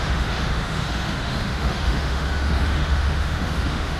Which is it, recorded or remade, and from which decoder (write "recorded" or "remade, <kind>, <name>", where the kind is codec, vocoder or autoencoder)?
remade, autoencoder, DAC-VAE